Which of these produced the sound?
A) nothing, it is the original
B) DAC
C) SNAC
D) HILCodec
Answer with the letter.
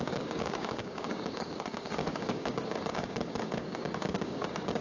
B